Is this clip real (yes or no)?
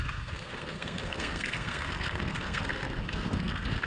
no